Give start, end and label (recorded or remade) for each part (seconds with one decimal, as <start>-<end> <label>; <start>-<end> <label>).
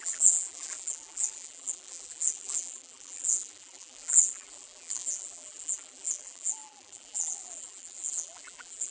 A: 0.0-8.9 remade